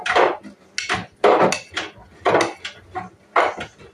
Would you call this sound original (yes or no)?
yes